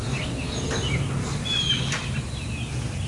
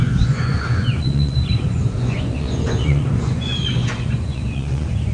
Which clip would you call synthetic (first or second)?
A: second